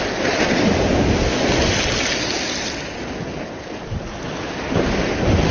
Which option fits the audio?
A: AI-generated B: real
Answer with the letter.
B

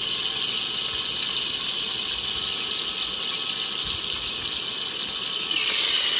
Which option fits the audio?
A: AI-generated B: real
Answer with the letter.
B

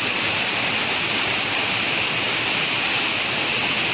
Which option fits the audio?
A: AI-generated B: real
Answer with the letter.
B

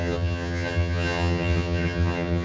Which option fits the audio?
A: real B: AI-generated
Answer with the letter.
B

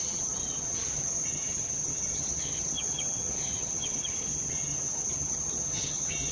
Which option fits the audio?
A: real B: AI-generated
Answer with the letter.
B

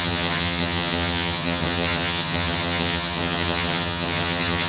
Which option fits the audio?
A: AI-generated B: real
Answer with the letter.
A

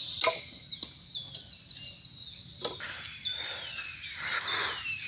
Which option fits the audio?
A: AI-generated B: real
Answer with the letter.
B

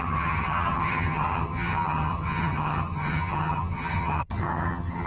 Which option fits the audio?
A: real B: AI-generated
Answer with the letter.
B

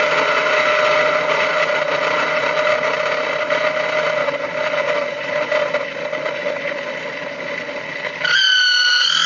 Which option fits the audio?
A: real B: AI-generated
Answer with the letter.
A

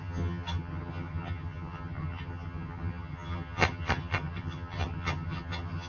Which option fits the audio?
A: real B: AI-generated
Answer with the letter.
B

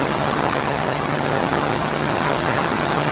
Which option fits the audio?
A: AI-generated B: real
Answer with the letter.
A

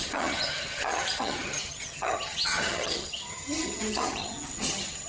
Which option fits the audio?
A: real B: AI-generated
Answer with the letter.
B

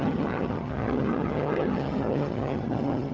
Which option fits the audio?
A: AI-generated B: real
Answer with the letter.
A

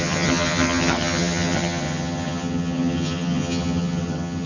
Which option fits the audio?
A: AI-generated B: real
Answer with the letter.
A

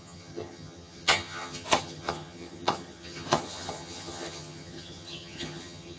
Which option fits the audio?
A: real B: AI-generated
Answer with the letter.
B